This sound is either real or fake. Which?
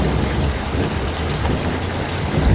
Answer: real